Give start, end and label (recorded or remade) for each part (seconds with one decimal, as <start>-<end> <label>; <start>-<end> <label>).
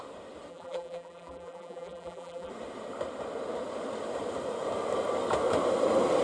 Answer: 0.0-0.5 recorded; 0.5-2.5 remade; 2.5-6.2 recorded